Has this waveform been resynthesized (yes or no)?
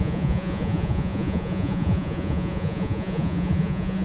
yes